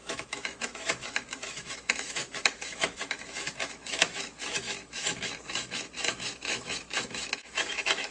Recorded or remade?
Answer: remade